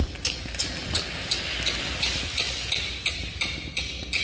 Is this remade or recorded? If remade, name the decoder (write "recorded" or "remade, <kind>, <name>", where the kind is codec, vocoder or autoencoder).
recorded